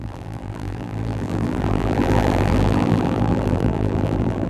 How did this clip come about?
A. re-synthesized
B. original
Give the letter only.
A